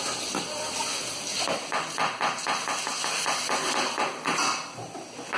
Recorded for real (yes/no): yes